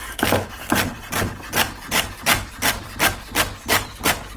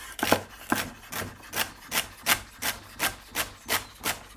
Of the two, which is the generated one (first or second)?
first